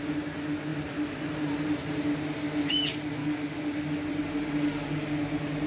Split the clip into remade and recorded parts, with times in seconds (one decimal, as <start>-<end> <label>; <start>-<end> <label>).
0.0-5.7 recorded